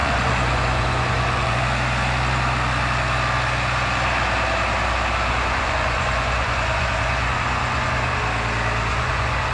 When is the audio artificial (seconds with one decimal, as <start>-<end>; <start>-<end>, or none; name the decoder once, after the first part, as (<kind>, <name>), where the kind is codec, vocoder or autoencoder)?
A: 0.0-1.6 (vocoder, Vocos); 5.3-8.2; 8.9-9.5

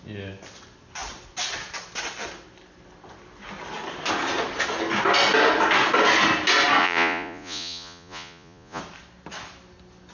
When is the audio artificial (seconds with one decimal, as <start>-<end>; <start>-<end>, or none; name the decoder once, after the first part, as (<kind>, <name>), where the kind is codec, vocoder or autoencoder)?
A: 6.8-8.8 (vocoder, Vocos)

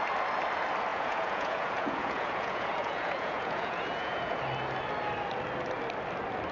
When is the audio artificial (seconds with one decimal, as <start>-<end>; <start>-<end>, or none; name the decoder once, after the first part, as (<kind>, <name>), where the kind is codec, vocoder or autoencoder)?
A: 0.9-4.4 (vocoder, Vocos)

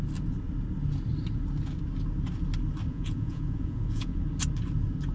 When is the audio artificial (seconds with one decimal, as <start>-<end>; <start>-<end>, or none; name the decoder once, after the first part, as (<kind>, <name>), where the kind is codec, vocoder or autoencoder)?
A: 2.9-4.2 (vocoder, Vocos)